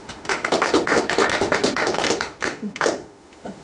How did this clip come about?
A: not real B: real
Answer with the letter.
A